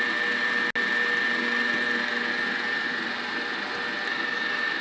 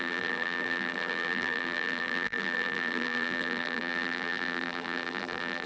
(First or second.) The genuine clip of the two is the first